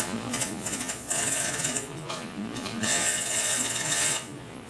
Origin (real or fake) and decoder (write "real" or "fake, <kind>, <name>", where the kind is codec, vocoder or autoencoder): fake, vocoder, Vocos